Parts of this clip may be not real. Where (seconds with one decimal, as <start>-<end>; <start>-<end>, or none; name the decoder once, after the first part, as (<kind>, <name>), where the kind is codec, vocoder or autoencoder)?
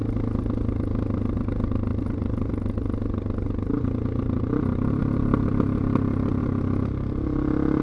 1.9-2.5 (vocoder, BigVGAN v2)